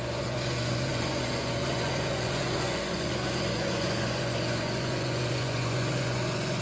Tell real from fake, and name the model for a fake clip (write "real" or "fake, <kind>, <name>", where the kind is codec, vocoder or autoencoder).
fake, vocoder, Vocos